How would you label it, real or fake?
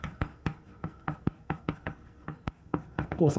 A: fake